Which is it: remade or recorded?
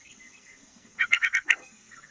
remade